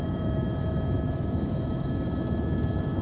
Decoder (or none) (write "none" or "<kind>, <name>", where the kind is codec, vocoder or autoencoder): autoencoder, DAC-VAE